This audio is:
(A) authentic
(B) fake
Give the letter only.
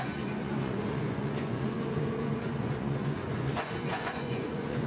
B